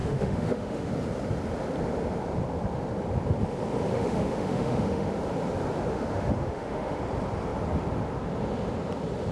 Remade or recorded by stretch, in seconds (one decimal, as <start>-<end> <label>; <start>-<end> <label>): 0.0-0.9 remade; 0.9-3.9 recorded; 3.9-5.2 remade; 5.2-5.9 recorded; 5.9-7.0 remade; 7.0-9.3 recorded